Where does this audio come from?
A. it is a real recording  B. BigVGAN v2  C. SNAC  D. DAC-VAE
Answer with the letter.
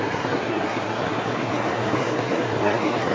C